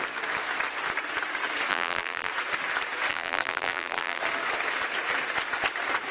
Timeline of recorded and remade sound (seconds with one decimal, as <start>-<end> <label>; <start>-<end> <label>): 0.0-1.7 recorded; 1.7-2.3 remade; 2.3-3.1 recorded; 3.1-4.2 remade; 4.2-6.1 recorded